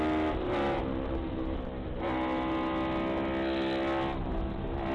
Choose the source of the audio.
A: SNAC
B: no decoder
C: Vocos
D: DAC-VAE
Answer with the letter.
B